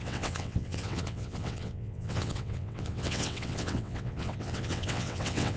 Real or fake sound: fake